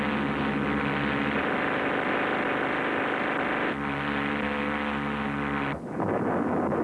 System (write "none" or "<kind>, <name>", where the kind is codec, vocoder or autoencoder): none